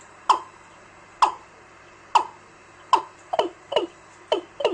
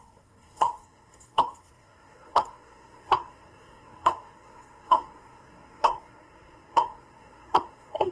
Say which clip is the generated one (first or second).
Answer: second